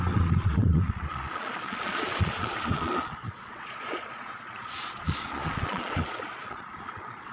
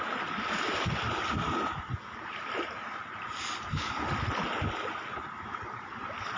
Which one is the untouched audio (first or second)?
second